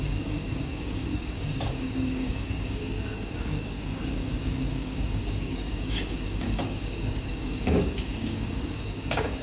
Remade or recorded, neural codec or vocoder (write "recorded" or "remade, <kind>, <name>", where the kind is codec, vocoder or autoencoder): remade, codec, DAC